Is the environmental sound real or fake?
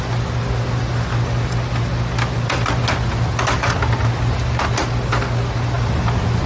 real